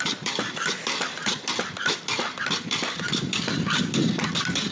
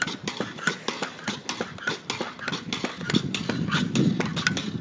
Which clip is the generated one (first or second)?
first